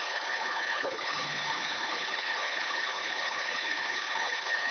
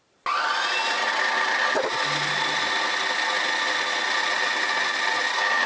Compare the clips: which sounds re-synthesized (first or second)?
first